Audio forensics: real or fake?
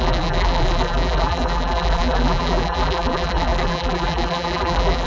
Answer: fake